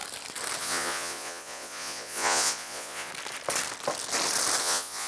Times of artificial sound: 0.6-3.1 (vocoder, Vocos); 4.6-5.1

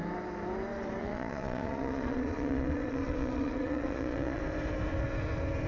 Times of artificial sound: 1.0-4.4 (vocoder, Vocos)

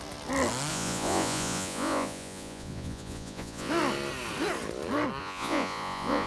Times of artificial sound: 0.7-3.7 (vocoder, Vocos); 5.2-6.3

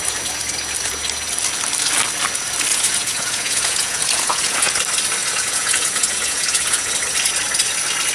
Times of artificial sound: 2.7-4.7 (vocoder, Vocos); 5.2-6.9

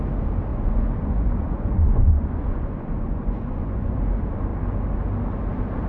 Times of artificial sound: 0.5-4.0 (vocoder, Vocos)

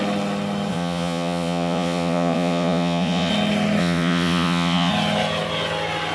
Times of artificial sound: 0.7-3.3 (vocoder, Vocos); 3.8-4.9

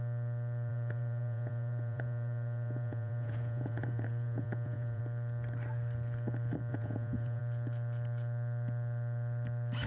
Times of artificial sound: 0.7-5.0 (vocoder, Vocos); 6.7-7.4

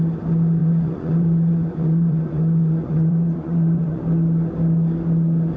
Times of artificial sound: 0.6-4.0 (vocoder, Vocos)